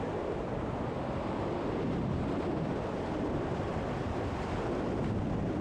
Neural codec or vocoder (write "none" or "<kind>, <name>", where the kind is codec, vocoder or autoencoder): none